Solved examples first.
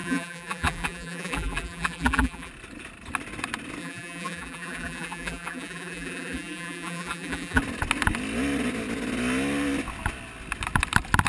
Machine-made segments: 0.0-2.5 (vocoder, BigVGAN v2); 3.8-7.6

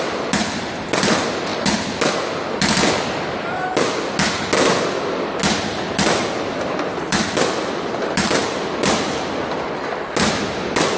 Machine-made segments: none

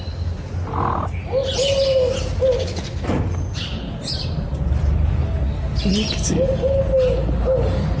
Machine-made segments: none